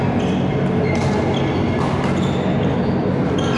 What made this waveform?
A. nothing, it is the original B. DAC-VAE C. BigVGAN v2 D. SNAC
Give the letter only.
A